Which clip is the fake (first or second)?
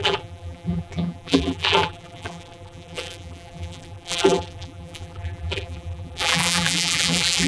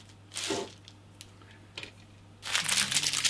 first